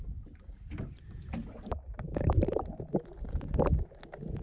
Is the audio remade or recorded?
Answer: recorded